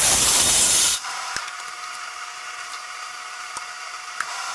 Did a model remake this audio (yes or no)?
yes